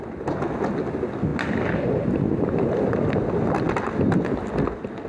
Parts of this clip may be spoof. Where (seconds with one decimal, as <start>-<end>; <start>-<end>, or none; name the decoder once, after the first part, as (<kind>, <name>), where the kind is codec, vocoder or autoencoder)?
none